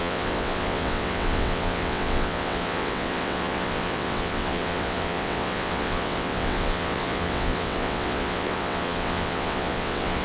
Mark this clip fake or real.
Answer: fake